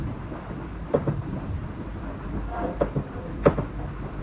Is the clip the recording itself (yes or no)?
no